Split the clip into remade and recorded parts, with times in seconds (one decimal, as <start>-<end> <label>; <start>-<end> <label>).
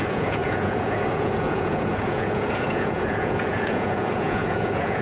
0.0-5.0 remade